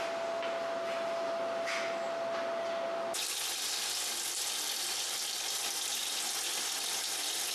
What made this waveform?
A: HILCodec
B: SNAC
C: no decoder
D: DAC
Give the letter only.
C